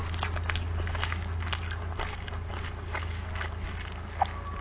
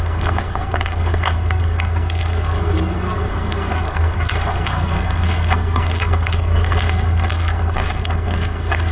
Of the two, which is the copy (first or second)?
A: second